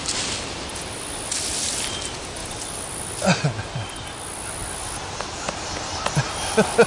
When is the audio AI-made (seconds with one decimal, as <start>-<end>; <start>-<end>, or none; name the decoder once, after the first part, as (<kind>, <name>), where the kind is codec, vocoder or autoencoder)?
2.4-3.0 (vocoder, BigVGAN v2)

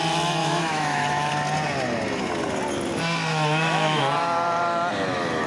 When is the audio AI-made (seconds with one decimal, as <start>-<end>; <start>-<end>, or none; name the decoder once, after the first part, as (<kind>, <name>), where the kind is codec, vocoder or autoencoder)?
0.4-1.3 (autoencoder, DAC-VAE); 3.3-4.0

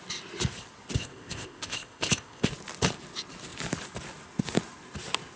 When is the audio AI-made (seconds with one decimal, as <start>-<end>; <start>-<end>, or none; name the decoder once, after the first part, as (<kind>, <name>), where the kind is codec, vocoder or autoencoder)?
1.0-2.5 (codec, ZipCodec)

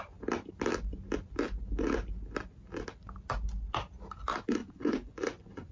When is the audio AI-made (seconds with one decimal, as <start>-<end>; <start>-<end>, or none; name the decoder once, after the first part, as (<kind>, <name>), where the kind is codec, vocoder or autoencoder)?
4.6-5.7 (vocoder, Vocos)

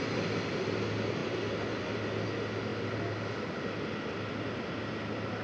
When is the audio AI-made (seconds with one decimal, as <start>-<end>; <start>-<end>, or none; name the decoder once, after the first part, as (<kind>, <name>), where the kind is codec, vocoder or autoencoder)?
none

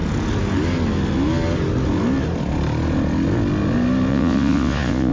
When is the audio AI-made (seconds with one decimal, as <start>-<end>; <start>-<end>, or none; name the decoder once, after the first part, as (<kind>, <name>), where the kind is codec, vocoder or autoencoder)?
4.1-5.1 (vocoder, Vocos)